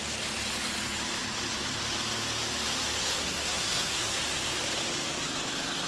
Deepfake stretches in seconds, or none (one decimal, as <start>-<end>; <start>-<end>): 3.0-4.2

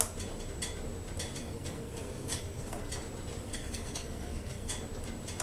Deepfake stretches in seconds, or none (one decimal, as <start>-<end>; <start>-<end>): 1.4-2.9; 3.4-4.7

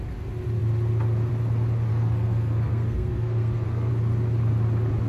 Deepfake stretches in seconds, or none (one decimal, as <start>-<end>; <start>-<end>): 1.9-3.9

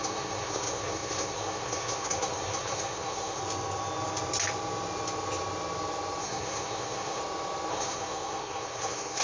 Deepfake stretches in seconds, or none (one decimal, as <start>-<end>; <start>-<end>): 0.0-3.4; 6.2-7.2; 7.7-9.2

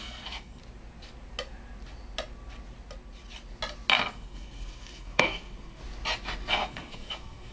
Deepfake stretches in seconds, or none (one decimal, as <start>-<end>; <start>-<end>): 0.0-0.6; 4.1-5.8; 6.5-7.5

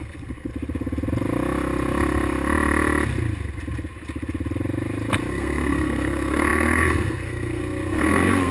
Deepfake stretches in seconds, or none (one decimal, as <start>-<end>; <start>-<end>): 0.0-0.5; 5.3-8.5